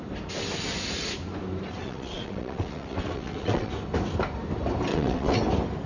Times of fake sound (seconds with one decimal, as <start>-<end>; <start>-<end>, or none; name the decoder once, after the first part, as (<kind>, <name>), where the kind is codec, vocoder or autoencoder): 1.8-3.7 (vocoder, WaveNeXt); 4.9-5.4